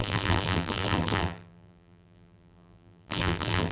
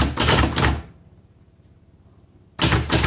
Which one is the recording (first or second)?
second